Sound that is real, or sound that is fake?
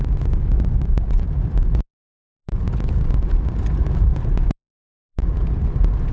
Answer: fake